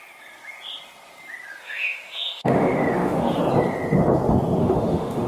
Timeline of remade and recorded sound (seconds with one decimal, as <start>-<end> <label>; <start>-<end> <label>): 0.0-1.6 recorded; 1.6-3.4 remade; 3.4-4.6 recorded; 4.6-5.3 remade